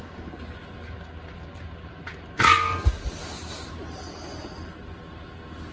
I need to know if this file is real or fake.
real